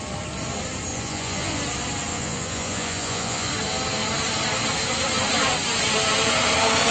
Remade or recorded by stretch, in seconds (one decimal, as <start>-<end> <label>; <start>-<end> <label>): 0.0-0.9 recorded; 0.9-1.6 remade; 1.6-2.1 recorded; 2.1-3.5 remade; 3.5-6.9 recorded